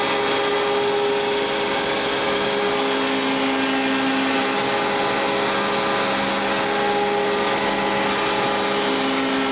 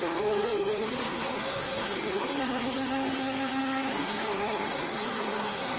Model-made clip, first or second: second